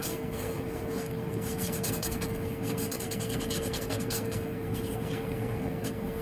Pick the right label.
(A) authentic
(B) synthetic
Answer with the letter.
B